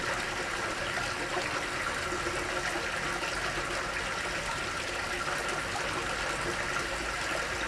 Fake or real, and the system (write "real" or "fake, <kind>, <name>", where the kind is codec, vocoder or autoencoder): real